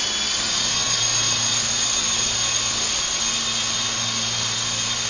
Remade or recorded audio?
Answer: recorded